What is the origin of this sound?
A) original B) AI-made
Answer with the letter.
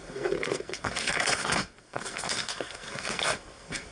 B